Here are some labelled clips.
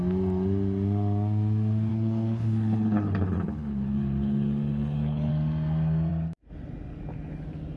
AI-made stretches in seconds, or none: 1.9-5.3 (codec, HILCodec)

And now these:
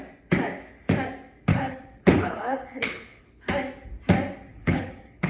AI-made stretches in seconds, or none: 1.5-3.4 (codec, HILCodec); 4.5-5.3